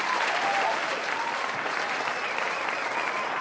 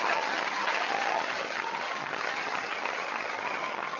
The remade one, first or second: second